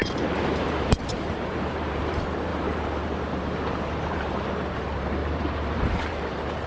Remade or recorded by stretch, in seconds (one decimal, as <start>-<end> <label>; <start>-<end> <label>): 0.0-0.6 recorded; 0.6-6.7 remade